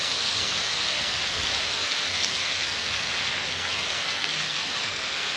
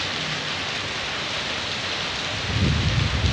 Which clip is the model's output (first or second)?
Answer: first